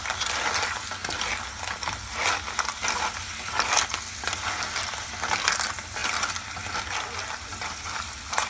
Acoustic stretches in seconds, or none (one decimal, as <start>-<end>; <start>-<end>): 0.0-8.5